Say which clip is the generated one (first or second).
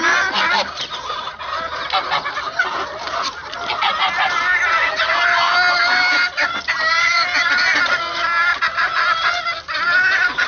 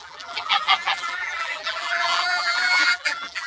second